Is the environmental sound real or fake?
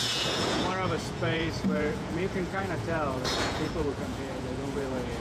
fake